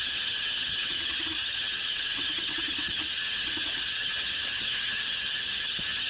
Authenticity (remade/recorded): remade